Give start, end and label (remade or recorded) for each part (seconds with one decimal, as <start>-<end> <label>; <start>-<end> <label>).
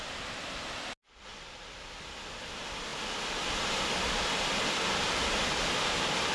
0.0-6.3 recorded